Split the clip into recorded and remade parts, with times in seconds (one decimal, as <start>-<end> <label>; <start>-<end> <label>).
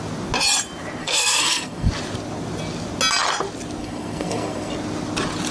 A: 0.0-1.0 recorded; 1.0-1.9 remade; 1.9-3.8 recorded; 3.8-4.7 remade; 4.7-5.5 recorded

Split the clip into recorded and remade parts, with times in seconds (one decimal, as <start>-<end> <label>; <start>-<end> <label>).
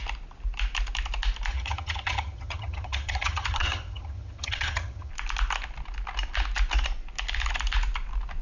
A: 0.0-1.5 recorded; 1.5-5.1 remade; 5.1-8.4 recorded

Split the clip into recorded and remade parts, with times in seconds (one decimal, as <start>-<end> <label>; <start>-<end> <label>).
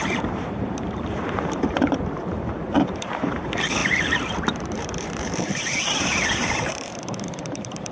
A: 0.0-7.9 remade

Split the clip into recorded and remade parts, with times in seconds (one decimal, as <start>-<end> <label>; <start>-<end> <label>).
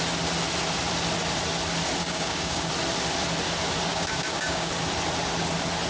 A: 0.0-2.0 recorded; 2.0-2.7 remade; 2.7-3.9 recorded; 3.9-4.7 remade; 4.7-5.9 recorded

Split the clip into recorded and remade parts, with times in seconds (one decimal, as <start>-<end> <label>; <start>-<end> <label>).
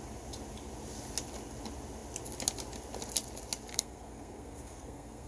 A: 0.0-3.7 recorded; 3.7-5.3 remade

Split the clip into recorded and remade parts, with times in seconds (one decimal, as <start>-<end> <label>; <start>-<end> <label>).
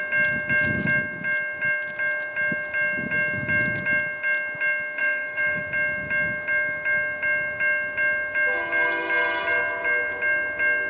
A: 0.0-5.0 recorded; 5.0-5.6 remade; 5.6-10.9 recorded